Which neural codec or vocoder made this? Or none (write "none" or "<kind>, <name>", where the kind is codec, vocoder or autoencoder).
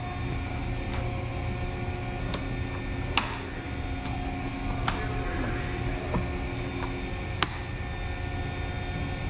none